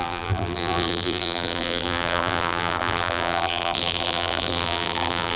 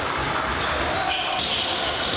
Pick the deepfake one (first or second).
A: first